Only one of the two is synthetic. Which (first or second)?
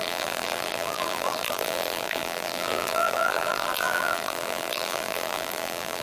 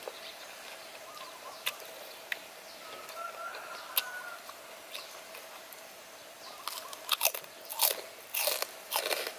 first